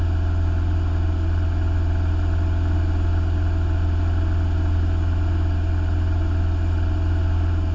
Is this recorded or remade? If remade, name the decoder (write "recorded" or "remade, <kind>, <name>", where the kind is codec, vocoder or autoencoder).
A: recorded